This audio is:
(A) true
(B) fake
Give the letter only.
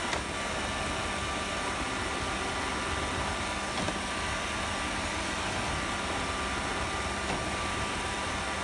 A